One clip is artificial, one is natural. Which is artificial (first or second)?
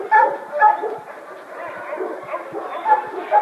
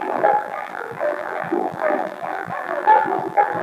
second